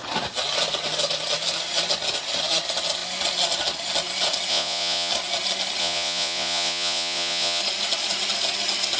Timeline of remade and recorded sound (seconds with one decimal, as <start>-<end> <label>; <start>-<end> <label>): 0.0-4.5 recorded; 4.5-5.1 remade; 5.1-5.8 recorded; 5.8-7.6 remade; 7.6-9.0 recorded